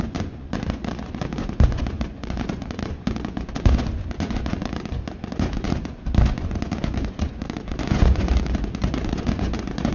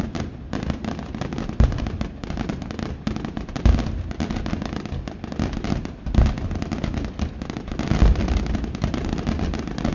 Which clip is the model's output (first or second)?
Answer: first